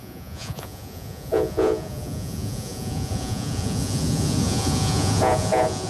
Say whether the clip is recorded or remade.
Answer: remade